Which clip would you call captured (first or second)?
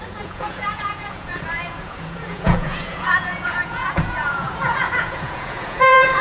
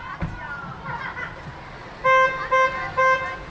second